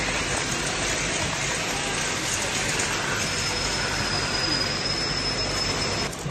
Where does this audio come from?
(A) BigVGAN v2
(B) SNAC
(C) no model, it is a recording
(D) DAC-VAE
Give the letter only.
C